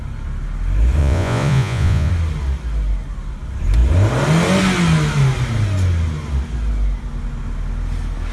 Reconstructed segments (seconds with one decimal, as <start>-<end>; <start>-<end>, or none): 1.0-2.1